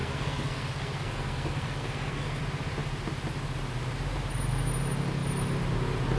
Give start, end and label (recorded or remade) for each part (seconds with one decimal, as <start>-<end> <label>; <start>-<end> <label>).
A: 0.0-2.4 remade; 2.4-6.2 recorded